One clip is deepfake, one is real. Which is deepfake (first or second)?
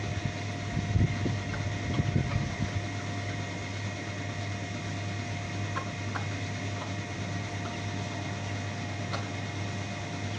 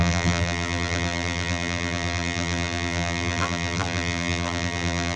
second